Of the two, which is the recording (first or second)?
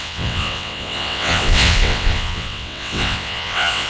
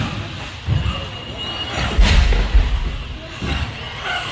second